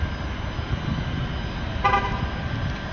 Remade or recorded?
recorded